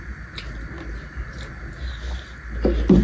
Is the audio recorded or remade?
recorded